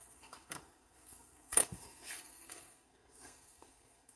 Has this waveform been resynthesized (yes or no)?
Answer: yes